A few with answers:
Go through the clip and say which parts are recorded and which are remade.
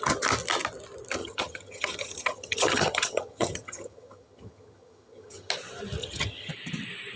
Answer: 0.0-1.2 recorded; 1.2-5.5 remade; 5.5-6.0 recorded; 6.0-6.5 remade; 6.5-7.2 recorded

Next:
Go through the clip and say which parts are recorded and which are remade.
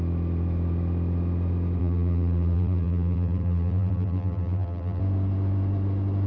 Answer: 0.0-1.8 recorded; 1.8-5.0 remade; 5.0-6.3 recorded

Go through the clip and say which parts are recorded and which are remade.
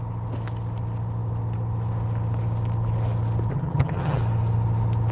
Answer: 0.0-3.5 recorded; 3.5-4.2 remade; 4.2-5.1 recorded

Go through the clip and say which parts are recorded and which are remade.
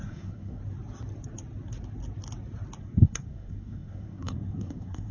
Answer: 0.0-0.6 remade; 0.6-2.8 recorded; 2.8-5.1 remade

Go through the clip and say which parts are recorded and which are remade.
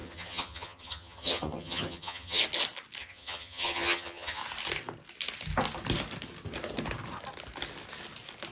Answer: 0.0-2.4 remade; 2.4-3.0 recorded; 3.0-4.4 remade; 4.4-8.5 recorded